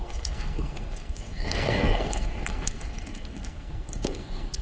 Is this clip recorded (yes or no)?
no